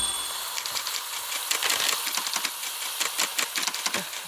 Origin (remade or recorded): recorded